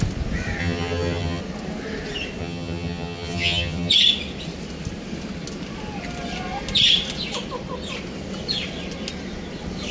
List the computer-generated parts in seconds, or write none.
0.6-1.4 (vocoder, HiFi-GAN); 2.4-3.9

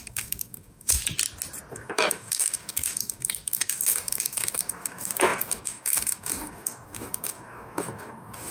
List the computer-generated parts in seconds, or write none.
0.0-1.0 (codec, DAC); 1.7-8.5

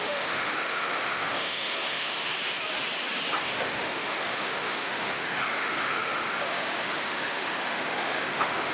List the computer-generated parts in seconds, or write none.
0.0-2.3 (autoencoder, DAC-VAE); 3.4-8.7